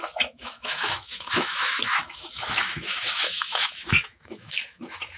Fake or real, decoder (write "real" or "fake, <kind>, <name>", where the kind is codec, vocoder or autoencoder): fake, autoencoder, DAC-VAE